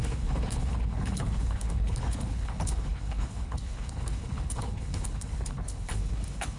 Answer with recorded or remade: remade